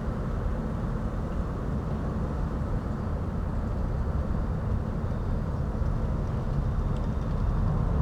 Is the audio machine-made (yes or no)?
no